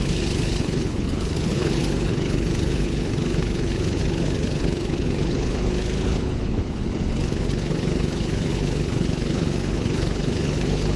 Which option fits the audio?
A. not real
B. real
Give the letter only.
A